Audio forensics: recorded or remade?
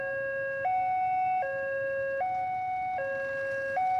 recorded